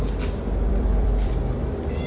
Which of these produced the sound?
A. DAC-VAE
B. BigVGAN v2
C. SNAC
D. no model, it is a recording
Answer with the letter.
B